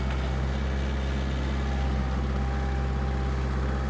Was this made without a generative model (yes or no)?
yes